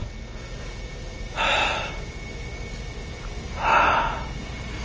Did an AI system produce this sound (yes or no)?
no